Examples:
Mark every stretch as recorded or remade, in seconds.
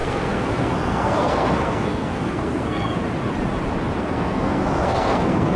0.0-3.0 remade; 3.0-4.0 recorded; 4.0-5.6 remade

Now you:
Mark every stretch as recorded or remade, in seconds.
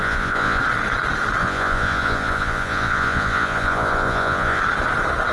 0.0-0.6 remade; 0.6-1.4 recorded; 1.4-4.6 remade; 4.6-5.3 recorded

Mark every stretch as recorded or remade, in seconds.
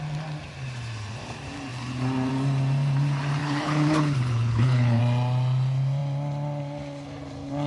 0.0-3.4 recorded; 3.4-5.0 remade; 5.0-7.7 recorded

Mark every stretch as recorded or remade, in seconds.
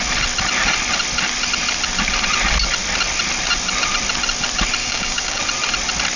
0.0-4.8 recorded; 4.8-5.4 remade; 5.4-6.2 recorded